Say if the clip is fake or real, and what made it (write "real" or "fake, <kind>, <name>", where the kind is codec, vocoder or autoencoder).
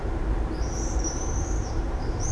fake, vocoder, BigVGAN v2